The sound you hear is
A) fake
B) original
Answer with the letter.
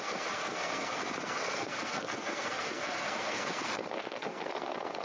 A